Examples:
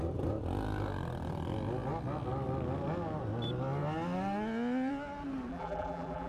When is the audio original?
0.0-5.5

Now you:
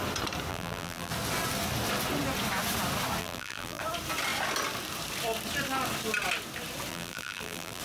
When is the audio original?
0.0-0.5; 1.1-3.2; 3.8-6.9

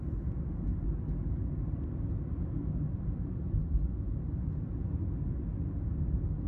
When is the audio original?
0.0-0.7; 1.8-3.6; 4.4-6.5

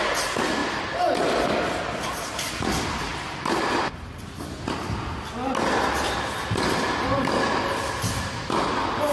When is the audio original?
0.0-0.6; 1.8-9.1

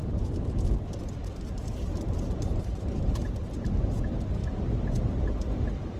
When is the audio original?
4.4-6.0

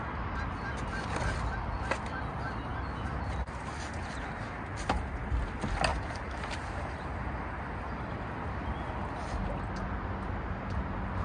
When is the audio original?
0.0-5.9; 7.8-11.2

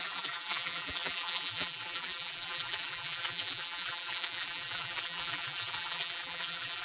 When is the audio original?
none